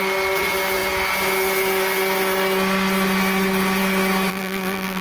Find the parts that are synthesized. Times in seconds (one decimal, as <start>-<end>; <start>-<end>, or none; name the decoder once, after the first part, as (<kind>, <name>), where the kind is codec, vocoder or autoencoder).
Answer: 4.3-5.0 (vocoder, BigVGAN v2)